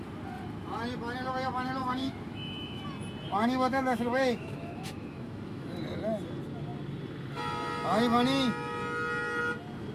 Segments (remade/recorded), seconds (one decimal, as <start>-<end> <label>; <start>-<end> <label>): 0.0-1.8 recorded; 1.8-2.8 remade; 2.8-3.3 recorded; 3.3-5.8 remade; 5.8-9.9 recorded